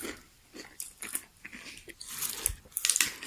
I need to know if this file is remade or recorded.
recorded